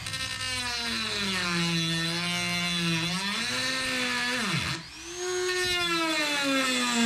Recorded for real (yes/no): yes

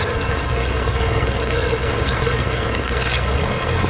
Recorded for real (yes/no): no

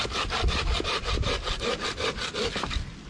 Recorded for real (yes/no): yes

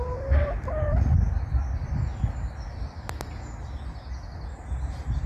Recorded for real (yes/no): yes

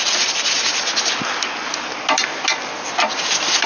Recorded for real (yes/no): yes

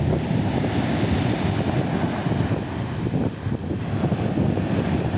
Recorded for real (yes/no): yes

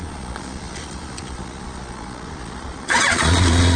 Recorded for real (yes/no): no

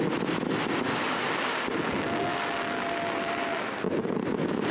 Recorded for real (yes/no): yes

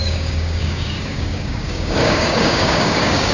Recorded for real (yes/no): no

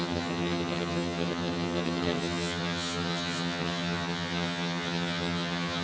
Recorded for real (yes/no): no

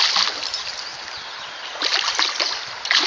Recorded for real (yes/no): yes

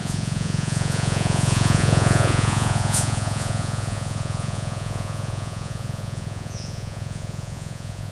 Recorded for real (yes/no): no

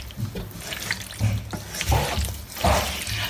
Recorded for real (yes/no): yes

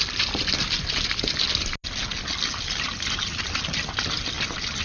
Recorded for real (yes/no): yes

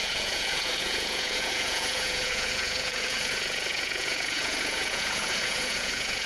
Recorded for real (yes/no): no